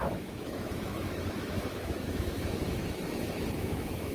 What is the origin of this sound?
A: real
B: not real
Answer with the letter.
B